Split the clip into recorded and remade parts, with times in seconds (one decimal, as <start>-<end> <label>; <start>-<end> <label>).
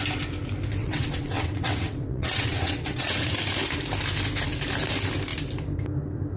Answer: 0.0-0.8 recorded; 0.8-3.3 remade; 3.3-6.4 recorded